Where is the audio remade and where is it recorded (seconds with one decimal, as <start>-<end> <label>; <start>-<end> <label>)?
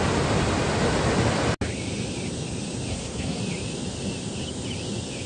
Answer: 0.0-2.9 recorded; 2.9-3.4 remade; 3.4-5.3 recorded